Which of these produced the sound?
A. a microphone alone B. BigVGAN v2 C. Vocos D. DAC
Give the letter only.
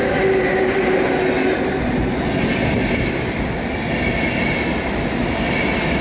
A